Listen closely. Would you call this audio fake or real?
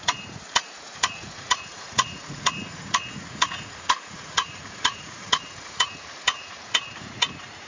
fake